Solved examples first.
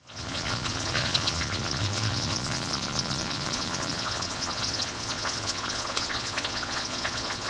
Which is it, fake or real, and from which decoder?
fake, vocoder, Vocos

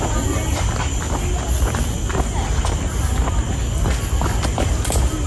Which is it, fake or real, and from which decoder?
real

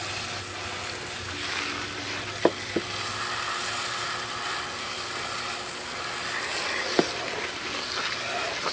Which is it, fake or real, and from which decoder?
real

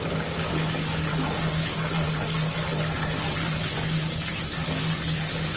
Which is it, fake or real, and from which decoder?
real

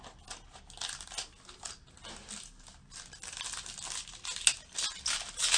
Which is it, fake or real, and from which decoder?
real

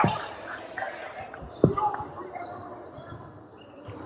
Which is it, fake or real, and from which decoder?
fake, vocoder, BigVGAN v2